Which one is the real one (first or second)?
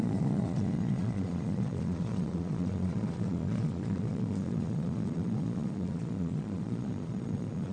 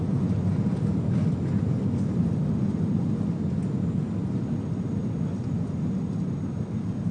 second